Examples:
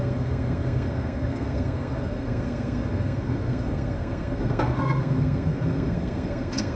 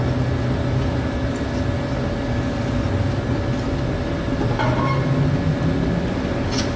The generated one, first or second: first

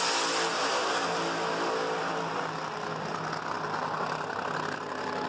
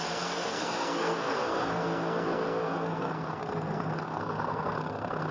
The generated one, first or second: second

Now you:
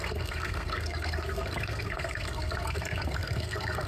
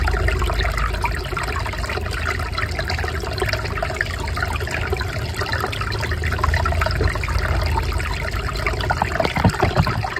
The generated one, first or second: first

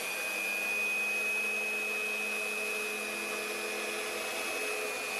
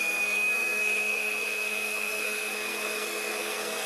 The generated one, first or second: second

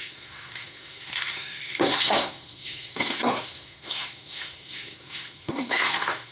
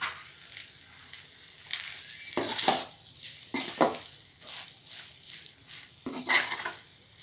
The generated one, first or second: first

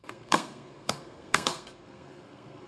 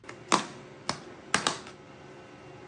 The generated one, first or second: first